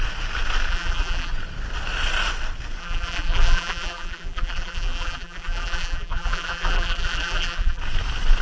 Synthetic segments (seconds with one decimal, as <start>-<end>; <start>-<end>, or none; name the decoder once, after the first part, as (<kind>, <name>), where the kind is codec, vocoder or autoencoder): 0.7-1.3 (vocoder, BigVGAN v2); 2.8-7.8